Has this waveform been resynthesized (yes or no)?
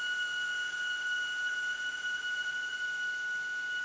no